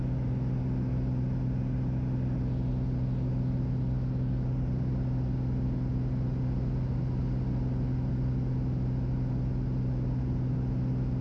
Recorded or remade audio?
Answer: recorded